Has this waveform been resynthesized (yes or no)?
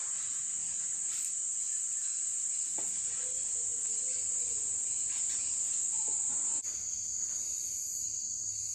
no